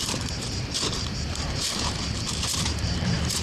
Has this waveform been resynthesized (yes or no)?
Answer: yes